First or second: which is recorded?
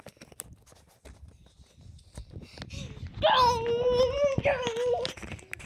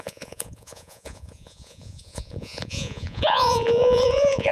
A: first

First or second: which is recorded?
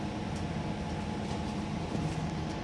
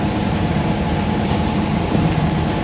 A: first